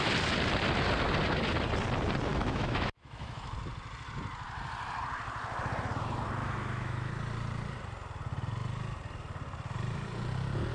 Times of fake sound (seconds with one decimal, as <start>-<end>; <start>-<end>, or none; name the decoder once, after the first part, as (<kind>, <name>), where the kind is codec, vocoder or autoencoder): 2.3-3.5 (autoencoder, DAC-VAE); 6.4-7.1